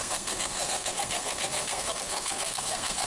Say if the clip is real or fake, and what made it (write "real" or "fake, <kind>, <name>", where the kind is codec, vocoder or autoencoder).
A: fake, codec, SNAC